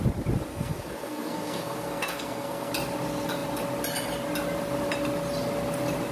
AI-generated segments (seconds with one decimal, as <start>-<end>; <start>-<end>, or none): 0.5-2.7